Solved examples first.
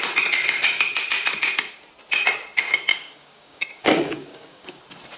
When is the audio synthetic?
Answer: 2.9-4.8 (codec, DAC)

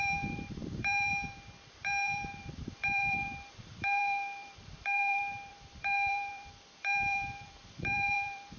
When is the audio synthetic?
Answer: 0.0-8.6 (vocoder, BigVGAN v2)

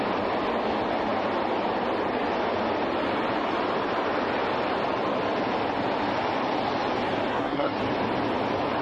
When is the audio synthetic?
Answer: 7.3-7.8 (codec, SNAC)

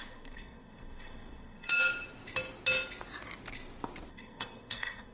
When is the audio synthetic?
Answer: 0.0-1.8 (codec, SNAC); 4.1-5.1